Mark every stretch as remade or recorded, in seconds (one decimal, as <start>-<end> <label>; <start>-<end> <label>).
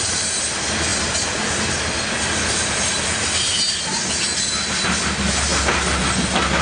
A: 0.0-6.6 recorded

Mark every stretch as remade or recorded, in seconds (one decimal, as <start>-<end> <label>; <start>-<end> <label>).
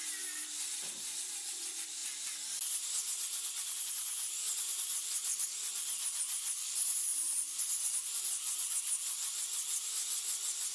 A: 0.0-0.4 recorded; 0.4-1.6 remade; 1.6-7.1 recorded; 7.1-8.2 remade; 8.2-10.7 recorded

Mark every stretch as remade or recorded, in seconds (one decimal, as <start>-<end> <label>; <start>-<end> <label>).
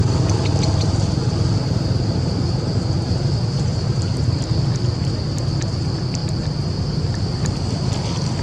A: 0.0-6.2 recorded; 6.2-7.2 remade; 7.2-8.4 recorded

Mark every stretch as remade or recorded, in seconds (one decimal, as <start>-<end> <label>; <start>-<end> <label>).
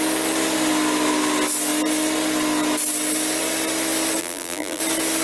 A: 0.0-4.2 recorded; 4.2-4.8 remade; 4.8-5.2 recorded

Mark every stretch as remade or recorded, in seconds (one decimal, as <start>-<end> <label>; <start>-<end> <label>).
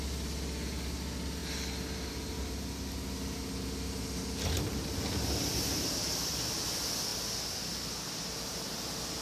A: 0.0-9.2 recorded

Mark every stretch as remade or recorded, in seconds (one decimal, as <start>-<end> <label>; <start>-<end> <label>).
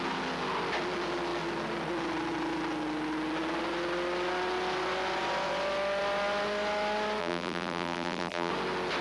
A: 0.0-7.2 recorded; 7.2-8.5 remade; 8.5-9.0 recorded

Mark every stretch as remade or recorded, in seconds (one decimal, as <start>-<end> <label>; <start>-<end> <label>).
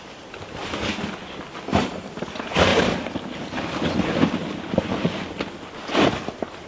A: 0.0-1.7 recorded; 1.7-2.2 remade; 2.2-6.7 recorded